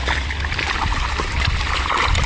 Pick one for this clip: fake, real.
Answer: real